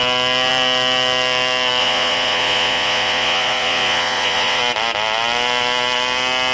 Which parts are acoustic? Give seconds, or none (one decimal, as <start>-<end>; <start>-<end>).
0.0-1.8; 4.6-6.5